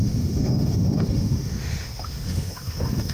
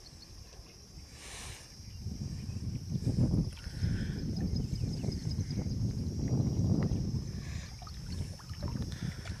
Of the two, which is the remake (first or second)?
first